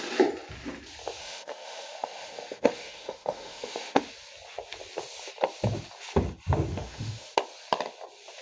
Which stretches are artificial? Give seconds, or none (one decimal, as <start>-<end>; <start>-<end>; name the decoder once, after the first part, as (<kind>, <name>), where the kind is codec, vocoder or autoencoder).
1.2-4.0 (autoencoder, DAC-VAE); 6.7-7.3